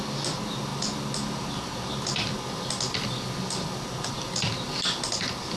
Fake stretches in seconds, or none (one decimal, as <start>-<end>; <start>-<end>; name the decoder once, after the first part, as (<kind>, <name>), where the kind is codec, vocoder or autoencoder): none